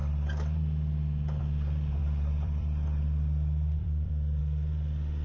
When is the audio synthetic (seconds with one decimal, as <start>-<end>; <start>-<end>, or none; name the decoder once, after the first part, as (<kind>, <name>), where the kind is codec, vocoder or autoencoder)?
2.0-4.4 (vocoder, BigVGAN v2)